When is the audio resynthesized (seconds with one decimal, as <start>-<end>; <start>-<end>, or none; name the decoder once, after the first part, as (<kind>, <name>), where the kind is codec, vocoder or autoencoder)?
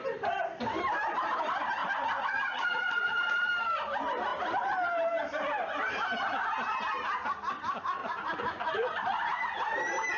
1.8-3.5 (vocoder, Vocos); 8.0-9.4